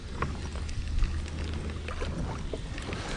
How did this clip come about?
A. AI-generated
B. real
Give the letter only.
B